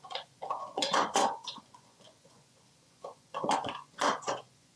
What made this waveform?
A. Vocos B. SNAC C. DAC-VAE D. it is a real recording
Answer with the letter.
A